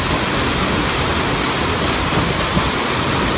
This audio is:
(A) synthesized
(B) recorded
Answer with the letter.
B